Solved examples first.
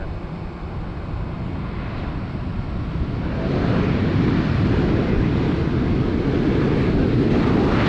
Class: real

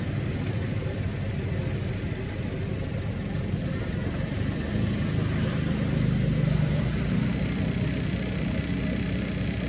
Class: real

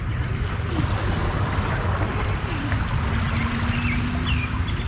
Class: real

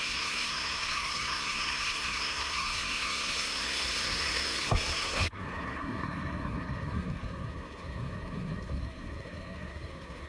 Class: fake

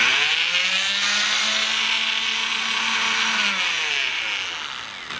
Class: real